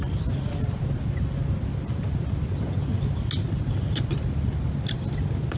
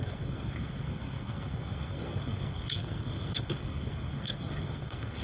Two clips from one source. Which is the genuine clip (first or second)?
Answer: first